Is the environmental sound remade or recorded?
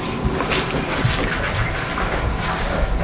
recorded